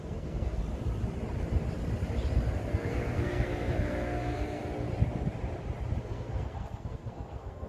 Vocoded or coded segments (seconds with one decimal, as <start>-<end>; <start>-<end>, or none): 0.0-0.6; 2.7-4.6; 6.0-7.7